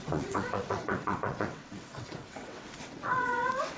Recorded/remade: remade